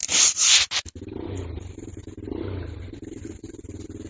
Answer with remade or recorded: recorded